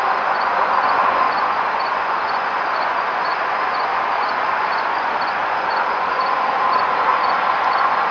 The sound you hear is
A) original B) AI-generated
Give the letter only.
B